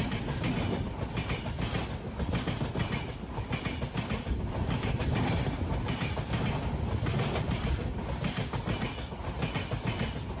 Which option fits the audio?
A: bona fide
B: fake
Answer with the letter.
A